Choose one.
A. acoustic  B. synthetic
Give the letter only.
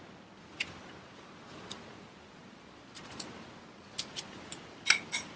A